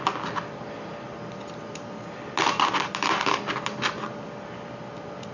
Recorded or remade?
recorded